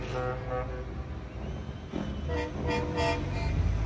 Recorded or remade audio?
recorded